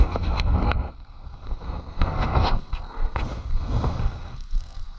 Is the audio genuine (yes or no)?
no